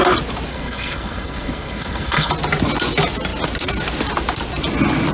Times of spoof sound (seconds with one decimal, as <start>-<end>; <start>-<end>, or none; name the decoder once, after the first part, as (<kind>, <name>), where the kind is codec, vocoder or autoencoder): 0.5-2.3 (codec, SNAC)